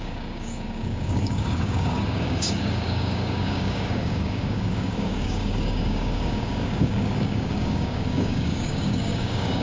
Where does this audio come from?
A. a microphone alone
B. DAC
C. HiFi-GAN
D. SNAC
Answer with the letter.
B